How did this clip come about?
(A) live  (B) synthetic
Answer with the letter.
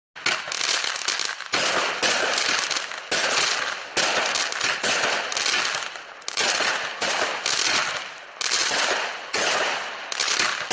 A